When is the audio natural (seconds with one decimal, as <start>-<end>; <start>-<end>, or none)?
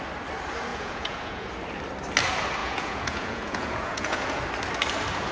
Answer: 0.0-0.7; 1.5-2.6; 4.4-5.3